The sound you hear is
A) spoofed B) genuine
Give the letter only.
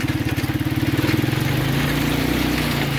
B